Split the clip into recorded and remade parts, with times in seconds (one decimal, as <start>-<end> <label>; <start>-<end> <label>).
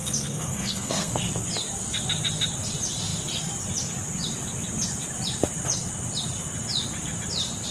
0.0-1.2 remade; 1.2-7.7 recorded